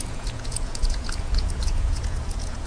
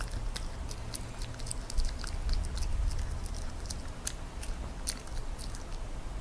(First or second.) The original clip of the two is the second